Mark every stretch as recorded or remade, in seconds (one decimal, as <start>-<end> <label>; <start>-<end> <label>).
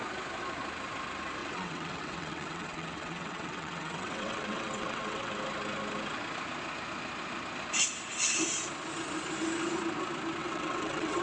0.0-1.4 recorded; 1.4-5.3 remade; 5.3-10.4 recorded; 10.4-11.2 remade